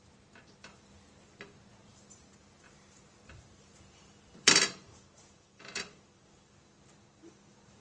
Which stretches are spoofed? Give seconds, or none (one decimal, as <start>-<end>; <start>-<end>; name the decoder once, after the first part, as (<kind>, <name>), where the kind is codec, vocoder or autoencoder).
1.9-6.6 (vocoder, BigVGAN v2)